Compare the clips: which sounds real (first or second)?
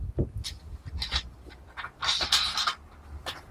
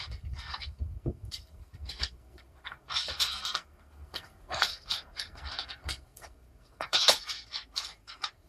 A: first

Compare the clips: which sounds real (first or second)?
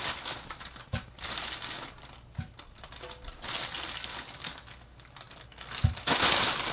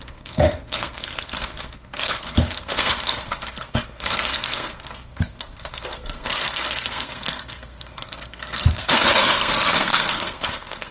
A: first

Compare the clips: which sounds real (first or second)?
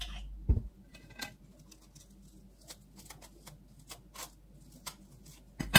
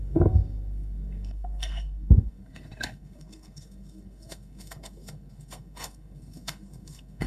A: first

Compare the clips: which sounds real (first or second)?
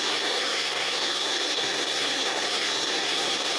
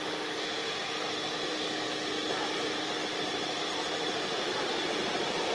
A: second